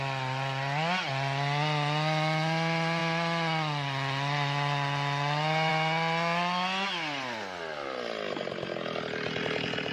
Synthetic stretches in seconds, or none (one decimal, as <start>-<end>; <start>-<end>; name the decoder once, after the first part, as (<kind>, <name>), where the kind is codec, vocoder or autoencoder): none

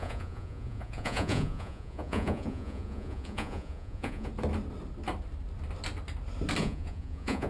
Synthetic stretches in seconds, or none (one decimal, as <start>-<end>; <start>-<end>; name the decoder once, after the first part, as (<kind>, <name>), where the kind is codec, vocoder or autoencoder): 0.0-4.3 (vocoder, Vocos); 6.6-7.5

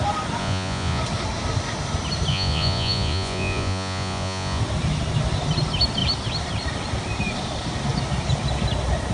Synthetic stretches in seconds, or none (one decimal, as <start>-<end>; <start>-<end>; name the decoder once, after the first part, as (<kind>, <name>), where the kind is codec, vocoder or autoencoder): 0.4-1.0 (vocoder, Vocos); 2.3-4.6